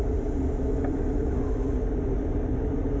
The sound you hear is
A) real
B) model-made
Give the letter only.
A